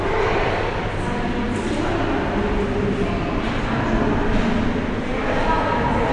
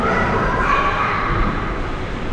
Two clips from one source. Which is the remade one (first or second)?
second